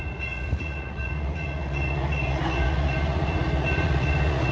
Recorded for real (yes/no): no